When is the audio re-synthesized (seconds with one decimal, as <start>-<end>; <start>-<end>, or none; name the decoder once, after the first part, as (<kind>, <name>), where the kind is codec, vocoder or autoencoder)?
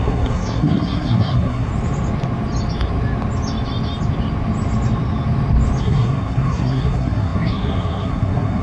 0.0-1.7 (codec, SNAC); 5.8-8.6